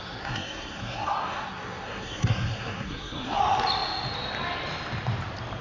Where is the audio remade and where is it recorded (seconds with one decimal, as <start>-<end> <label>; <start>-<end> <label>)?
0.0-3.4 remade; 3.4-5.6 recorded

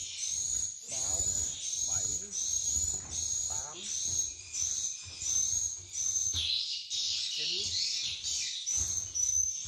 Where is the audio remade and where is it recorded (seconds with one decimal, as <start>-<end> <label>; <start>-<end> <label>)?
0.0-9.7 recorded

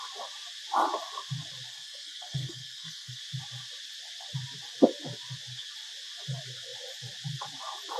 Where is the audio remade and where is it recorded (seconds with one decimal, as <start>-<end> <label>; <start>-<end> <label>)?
0.0-1.7 recorded; 1.7-3.2 remade; 3.2-8.0 recorded

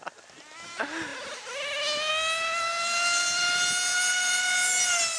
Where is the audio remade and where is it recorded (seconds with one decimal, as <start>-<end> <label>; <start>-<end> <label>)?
0.0-5.2 recorded

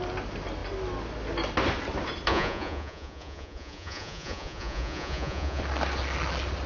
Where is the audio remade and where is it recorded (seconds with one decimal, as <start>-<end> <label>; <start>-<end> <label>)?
0.0-2.3 recorded; 2.3-5.6 remade; 5.6-6.7 recorded

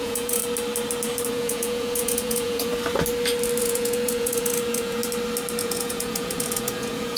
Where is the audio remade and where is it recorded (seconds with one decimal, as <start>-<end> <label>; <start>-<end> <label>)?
0.0-0.4 remade; 0.4-1.3 recorded; 1.3-2.7 remade; 2.7-3.6 recorded; 3.6-5.0 remade; 5.0-5.6 recorded; 5.6-7.2 remade

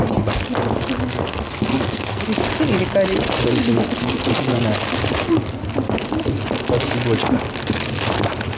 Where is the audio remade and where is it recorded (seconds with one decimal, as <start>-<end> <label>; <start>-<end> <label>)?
0.0-1.1 recorded; 1.1-2.2 remade; 2.2-4.0 recorded; 4.0-4.6 remade; 4.6-8.6 recorded

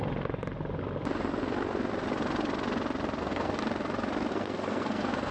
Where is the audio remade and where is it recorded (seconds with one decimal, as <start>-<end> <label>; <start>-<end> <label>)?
0.0-3.2 recorded; 3.2-3.6 remade; 3.6-4.3 recorded; 4.3-5.3 remade